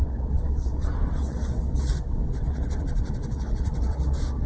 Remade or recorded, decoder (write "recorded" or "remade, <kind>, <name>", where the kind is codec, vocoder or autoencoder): remade, vocoder, WaveNeXt